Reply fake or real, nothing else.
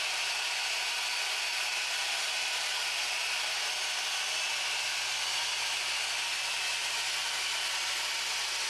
real